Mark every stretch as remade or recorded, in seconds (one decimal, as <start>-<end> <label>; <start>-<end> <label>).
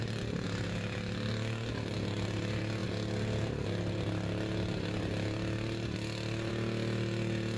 0.0-7.6 recorded